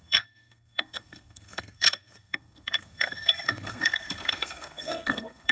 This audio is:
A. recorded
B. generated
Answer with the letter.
B